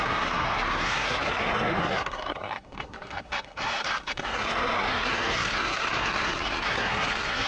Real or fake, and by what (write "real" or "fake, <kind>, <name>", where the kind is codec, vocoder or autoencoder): fake, codec, SNAC